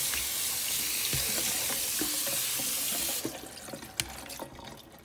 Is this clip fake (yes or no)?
no